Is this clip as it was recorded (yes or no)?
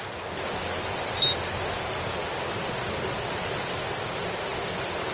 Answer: yes